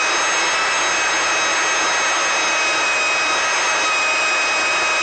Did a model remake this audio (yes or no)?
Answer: no